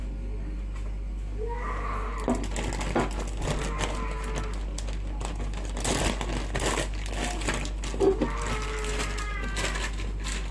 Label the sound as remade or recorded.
recorded